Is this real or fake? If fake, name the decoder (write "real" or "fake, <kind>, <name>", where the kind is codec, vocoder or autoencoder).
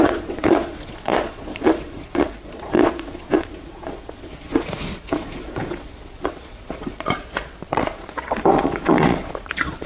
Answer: fake, vocoder, Vocos